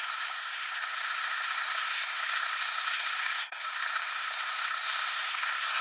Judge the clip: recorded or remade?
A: remade